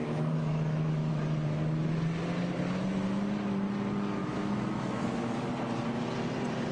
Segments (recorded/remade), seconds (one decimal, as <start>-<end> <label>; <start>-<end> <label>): 0.0-1.1 remade; 1.1-4.2 recorded; 4.2-5.5 remade; 5.5-6.7 recorded